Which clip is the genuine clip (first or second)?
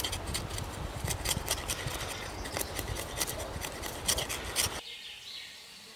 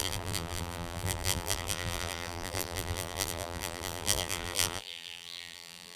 first